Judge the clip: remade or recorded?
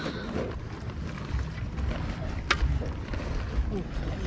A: recorded